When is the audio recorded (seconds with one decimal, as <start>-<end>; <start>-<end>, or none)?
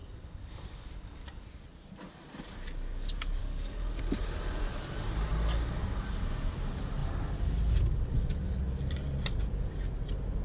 1.5-3.4; 4.0-10.4